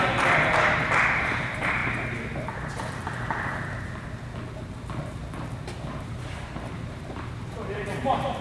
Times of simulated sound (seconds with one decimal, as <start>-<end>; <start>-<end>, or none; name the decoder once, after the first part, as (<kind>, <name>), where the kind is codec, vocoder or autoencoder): 0.0-1.8 (vocoder, BigVGAN v2); 6.0-8.4